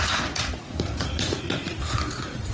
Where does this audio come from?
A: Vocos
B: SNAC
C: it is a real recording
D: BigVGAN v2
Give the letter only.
A